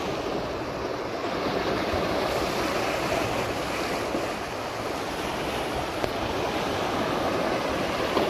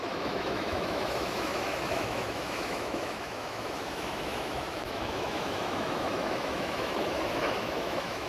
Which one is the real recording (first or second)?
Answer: first